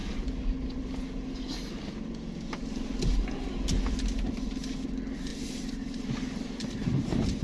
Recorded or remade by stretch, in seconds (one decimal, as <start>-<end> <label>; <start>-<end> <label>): 0.0-5.3 recorded; 5.3-7.4 remade